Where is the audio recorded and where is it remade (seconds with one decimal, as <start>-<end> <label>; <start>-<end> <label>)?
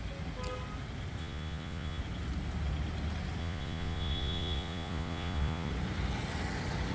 0.0-1.2 recorded; 1.2-2.0 remade; 2.0-3.4 recorded; 3.4-5.7 remade; 5.7-6.9 recorded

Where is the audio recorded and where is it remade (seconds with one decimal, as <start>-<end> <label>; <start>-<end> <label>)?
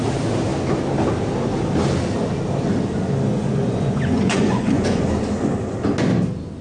0.0-3.3 recorded; 3.3-5.0 remade; 5.0-6.6 recorded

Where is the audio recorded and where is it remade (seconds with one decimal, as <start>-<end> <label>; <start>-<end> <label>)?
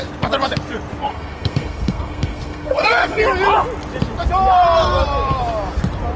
0.0-1.1 recorded; 1.1-3.2 remade; 3.2-6.2 recorded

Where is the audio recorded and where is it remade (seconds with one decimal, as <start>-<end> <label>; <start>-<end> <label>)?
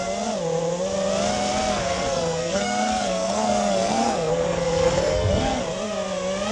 0.0-1.7 recorded; 1.7-5.6 remade; 5.6-6.5 recorded